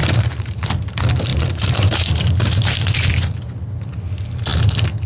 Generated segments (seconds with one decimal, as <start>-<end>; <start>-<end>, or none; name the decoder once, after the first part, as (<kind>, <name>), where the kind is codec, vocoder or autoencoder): 0.0-0.6 (vocoder, BigVGAN v2); 1.3-3.1